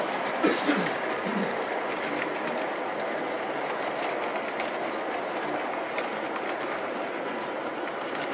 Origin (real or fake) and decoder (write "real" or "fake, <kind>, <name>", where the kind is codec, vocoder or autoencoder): real